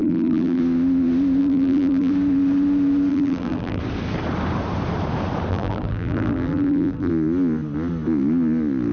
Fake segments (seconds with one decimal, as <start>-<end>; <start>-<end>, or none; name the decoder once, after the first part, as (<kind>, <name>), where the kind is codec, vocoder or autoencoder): 0.0-0.6 (vocoder, BigVGAN v2); 1.4-2.1; 3.1-3.8; 5.5-7.1